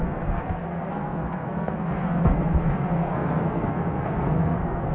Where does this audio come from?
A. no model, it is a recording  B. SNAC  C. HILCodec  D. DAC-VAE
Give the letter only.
B